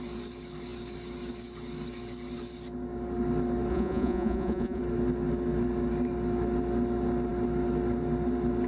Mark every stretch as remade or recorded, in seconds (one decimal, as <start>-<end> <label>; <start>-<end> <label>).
0.0-3.7 recorded; 3.7-4.8 remade; 4.8-8.7 recorded